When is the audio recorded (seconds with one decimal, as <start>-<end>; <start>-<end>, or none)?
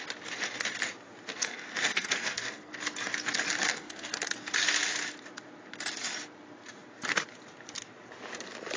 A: 0.0-1.3; 2.7-3.7; 4.2-8.8